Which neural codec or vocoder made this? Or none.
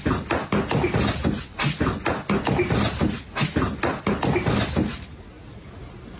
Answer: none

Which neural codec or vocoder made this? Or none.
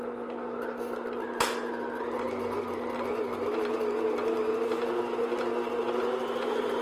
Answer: none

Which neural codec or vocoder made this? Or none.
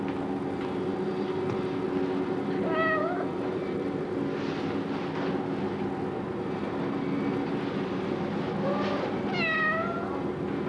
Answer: none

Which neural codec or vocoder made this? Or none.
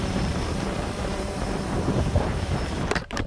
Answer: vocoder, BigVGAN v2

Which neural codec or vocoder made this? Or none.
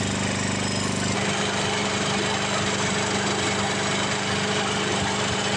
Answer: none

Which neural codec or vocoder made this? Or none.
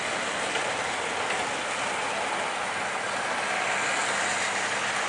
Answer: none